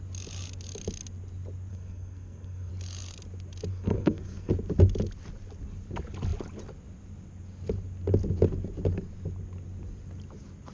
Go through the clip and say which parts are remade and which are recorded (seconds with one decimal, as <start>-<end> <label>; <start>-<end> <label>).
0.0-1.7 recorded; 1.7-2.7 remade; 2.7-3.7 recorded; 3.7-4.5 remade; 4.5-10.7 recorded